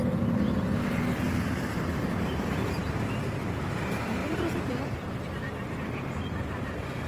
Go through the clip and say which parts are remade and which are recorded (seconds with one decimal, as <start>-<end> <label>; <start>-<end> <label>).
0.0-4.2 recorded; 4.2-5.5 remade; 5.5-7.1 recorded